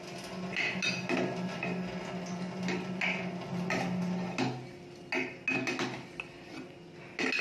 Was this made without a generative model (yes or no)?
yes